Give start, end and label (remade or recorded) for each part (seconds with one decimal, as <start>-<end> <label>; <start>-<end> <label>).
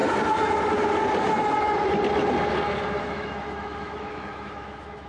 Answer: 0.0-3.0 recorded; 3.0-5.1 remade